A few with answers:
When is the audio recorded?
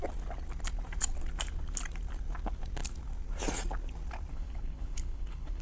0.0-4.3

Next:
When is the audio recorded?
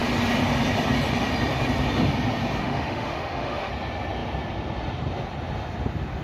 0.0-2.6; 3.7-6.2